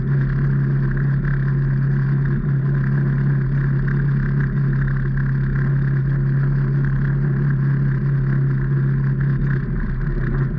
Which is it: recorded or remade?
recorded